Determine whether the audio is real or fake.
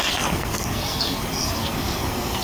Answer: fake